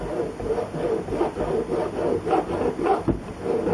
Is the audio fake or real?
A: real